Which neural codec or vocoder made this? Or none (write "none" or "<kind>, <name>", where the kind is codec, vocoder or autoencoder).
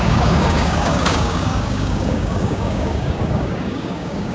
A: codec, DAC